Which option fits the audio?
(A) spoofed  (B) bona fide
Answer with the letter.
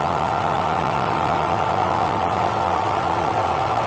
A